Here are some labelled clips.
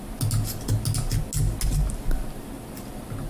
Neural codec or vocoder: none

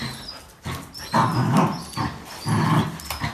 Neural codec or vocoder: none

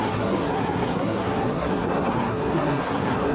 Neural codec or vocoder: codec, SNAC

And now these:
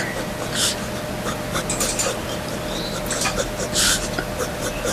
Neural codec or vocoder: none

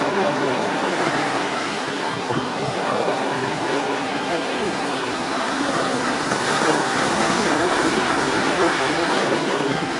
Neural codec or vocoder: codec, SNAC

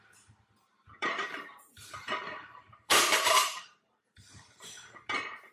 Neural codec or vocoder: vocoder, BigVGAN v2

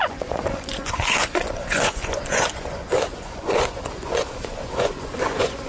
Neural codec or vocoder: vocoder, Vocos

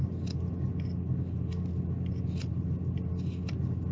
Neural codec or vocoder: none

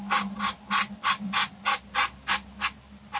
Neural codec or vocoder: none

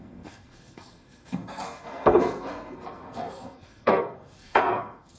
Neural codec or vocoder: codec, SNAC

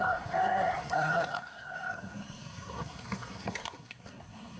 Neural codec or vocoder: codec, SNAC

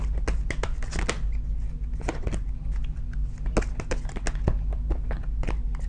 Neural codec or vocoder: none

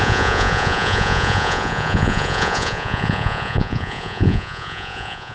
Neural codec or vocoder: vocoder, Vocos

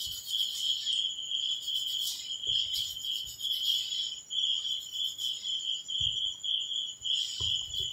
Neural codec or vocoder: none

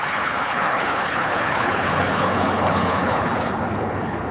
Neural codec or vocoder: codec, HILCodec